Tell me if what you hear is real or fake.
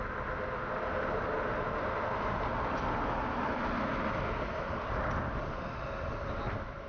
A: real